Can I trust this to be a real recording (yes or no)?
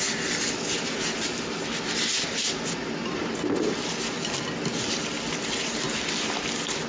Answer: yes